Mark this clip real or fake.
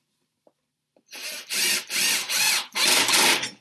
fake